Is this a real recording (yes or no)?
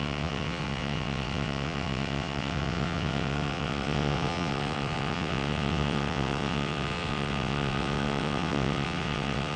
no